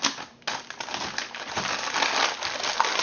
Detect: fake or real real